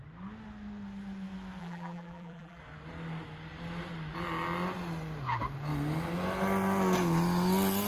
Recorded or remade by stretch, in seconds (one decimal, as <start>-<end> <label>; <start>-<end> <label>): 0.0-1.6 recorded; 1.6-2.6 remade; 2.6-7.9 recorded